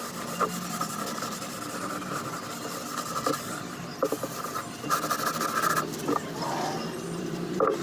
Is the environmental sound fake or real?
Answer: fake